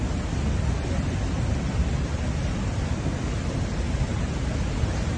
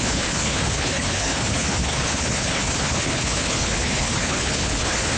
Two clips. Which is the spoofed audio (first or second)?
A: second